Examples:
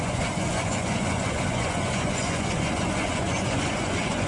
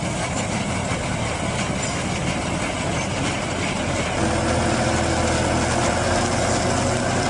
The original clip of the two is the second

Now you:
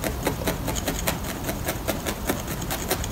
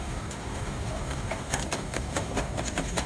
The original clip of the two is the first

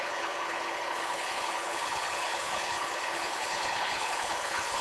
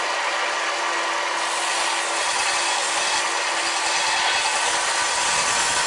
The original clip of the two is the second